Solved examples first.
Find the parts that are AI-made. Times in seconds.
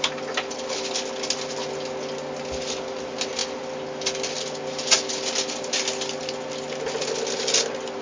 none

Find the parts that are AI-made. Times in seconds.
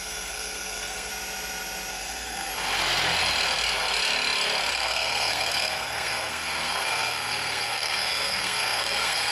0.0-1.1; 1.9-2.5; 4.7-9.3